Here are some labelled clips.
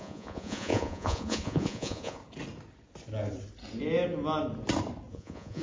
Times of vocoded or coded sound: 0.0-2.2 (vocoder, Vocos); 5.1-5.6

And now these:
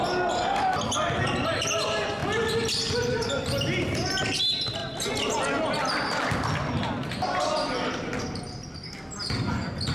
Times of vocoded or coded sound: none

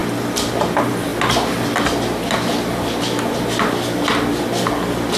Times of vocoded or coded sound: none

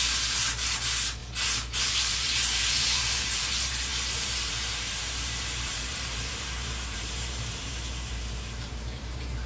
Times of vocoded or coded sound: 0.0-1.2 (vocoder, BigVGAN v2); 1.8-9.5

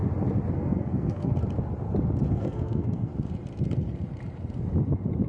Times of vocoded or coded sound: 0.5-1.3 (codec, SNAC); 2.3-3.1